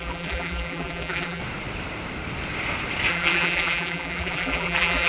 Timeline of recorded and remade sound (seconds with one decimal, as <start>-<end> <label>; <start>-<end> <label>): 0.0-1.4 remade; 1.4-3.1 recorded; 3.1-5.1 remade